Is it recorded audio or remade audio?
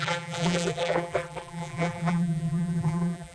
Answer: remade